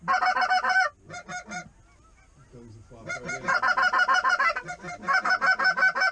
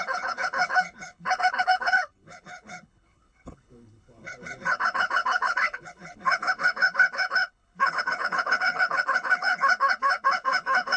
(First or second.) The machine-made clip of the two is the second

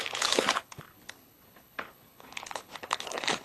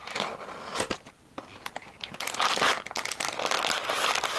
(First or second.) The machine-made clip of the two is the first